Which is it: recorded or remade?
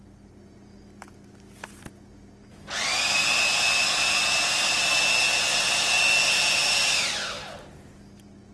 recorded